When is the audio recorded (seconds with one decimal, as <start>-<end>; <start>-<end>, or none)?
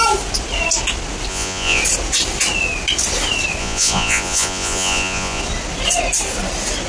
0.0-1.3; 1.8-3.6; 5.4-6.9